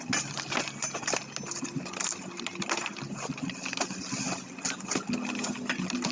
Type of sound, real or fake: real